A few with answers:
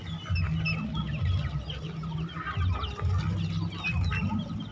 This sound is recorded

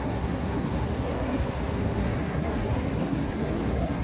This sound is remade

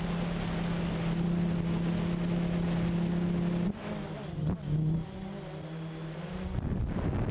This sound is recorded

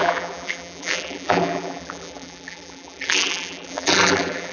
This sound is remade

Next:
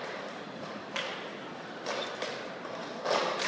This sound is recorded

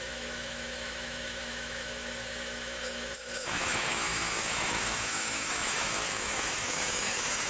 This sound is remade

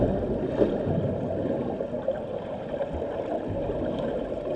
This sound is recorded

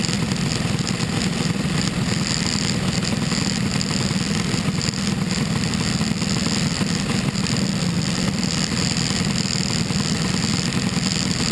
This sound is recorded